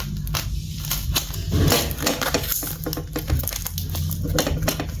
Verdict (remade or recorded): recorded